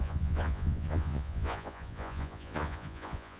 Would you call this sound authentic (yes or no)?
no